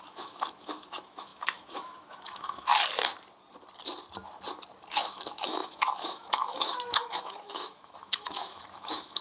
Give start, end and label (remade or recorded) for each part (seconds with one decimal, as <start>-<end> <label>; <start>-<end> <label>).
0.0-2.7 remade; 2.7-4.9 recorded; 4.9-9.2 remade

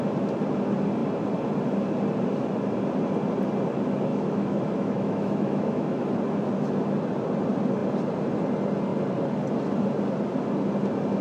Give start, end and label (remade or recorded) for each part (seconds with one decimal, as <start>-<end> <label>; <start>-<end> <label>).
0.0-4.1 recorded; 4.1-6.1 remade; 6.1-11.2 recorded

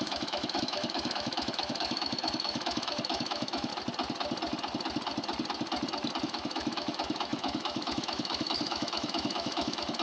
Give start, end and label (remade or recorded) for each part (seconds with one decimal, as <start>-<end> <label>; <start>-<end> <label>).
0.0-3.7 remade; 3.7-6.2 recorded; 6.2-10.0 remade

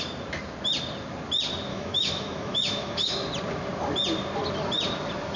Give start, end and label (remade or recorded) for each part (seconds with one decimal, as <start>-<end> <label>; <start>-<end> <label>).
0.0-1.7 recorded; 1.7-3.1 remade; 3.1-5.4 recorded

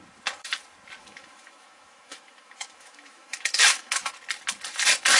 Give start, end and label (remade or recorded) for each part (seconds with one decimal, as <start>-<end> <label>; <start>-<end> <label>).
0.0-1.0 recorded; 1.0-4.1 remade; 4.1-5.2 recorded

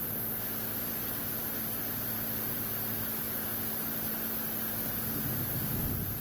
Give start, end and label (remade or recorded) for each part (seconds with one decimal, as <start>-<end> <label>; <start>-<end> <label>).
0.0-6.2 recorded

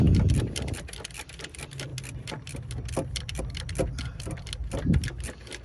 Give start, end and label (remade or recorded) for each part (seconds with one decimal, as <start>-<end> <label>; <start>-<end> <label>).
0.0-5.6 recorded